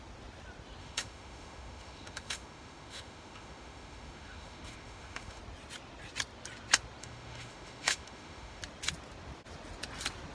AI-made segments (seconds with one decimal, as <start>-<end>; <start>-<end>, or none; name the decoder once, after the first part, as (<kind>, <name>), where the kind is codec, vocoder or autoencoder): 0.8-5.4 (autoencoder, DAC-VAE); 7.0-8.6